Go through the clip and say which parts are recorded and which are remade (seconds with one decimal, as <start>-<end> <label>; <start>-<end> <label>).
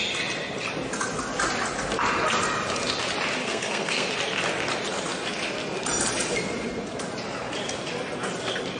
0.0-3.4 recorded; 3.4-4.1 remade; 4.1-8.8 recorded